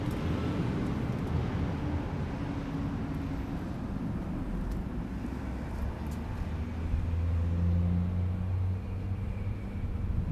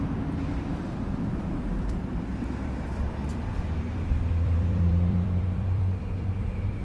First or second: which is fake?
second